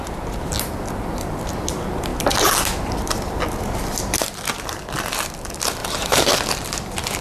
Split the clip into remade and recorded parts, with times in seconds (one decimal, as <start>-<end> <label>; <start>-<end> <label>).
0.0-5.8 recorded; 5.8-6.3 remade; 6.3-7.2 recorded